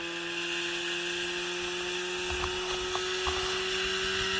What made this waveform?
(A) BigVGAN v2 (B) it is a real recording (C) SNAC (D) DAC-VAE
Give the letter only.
B